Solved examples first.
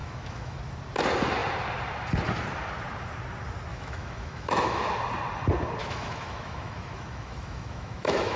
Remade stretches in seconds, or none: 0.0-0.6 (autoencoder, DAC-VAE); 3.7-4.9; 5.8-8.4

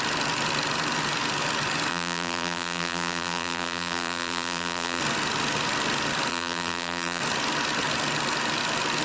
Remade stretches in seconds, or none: 1.9-5.0 (vocoder, BigVGAN v2); 6.3-7.2

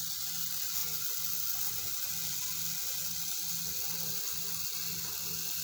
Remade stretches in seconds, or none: none

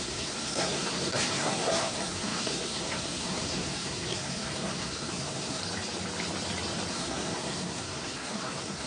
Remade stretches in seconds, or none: 0.0-5.6 (codec, SNAC); 6.9-8.9

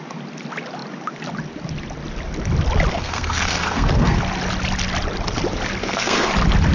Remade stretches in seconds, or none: 2.9-4.2 (codec, SNAC); 5.8-6.3